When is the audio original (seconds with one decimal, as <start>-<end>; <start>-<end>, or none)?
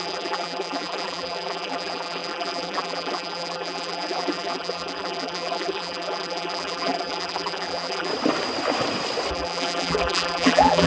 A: 8.1-9.3